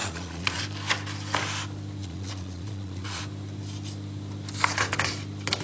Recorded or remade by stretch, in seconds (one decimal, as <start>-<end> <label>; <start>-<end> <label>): 0.0-0.6 remade; 0.6-2.0 recorded; 2.0-3.2 remade; 3.2-5.6 recorded